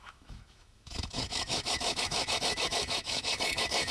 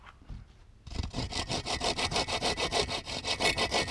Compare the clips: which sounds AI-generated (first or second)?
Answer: first